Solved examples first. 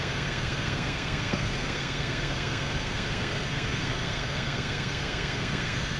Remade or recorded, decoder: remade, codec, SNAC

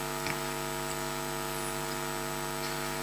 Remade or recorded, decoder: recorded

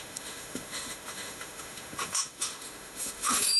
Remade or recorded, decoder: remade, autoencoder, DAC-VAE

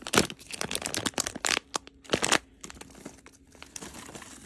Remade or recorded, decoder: recorded